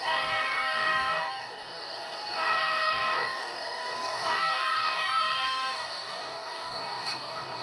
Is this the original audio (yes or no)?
no